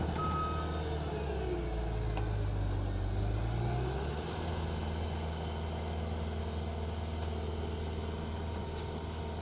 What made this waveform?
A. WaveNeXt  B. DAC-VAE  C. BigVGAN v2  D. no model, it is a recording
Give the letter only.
D